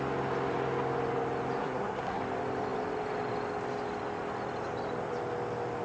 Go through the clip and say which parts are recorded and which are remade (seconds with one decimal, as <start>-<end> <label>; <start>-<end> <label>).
0.0-1.6 recorded; 1.6-2.2 remade; 2.2-5.8 recorded